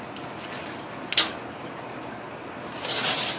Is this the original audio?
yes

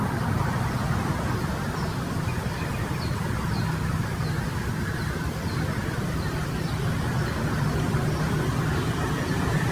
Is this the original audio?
yes